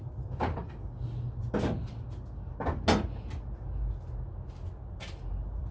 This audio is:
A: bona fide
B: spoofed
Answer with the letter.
A